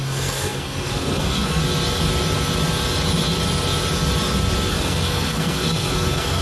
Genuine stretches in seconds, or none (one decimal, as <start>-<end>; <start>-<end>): 1.6-4.7